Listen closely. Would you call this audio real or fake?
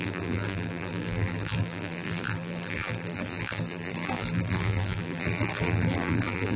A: fake